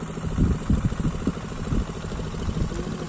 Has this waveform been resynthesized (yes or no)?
no